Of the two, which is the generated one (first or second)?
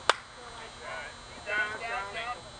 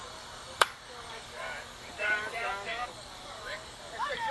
second